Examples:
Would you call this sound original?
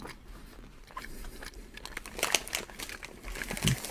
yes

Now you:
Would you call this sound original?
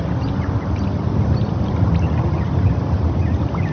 yes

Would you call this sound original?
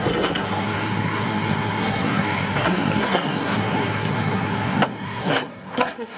no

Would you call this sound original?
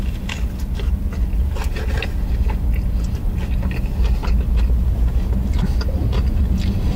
yes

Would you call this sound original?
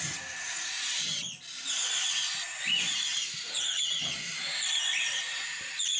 no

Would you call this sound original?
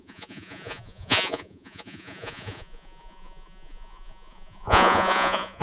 no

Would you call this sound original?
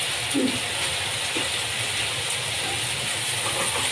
yes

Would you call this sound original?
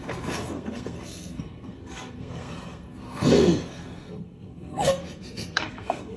no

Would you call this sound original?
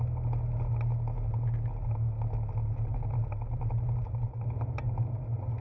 yes